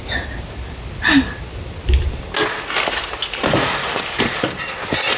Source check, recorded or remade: recorded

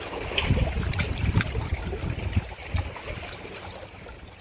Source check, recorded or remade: recorded